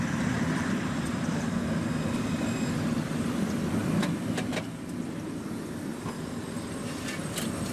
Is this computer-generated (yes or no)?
yes